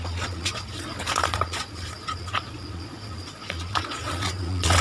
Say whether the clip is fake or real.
fake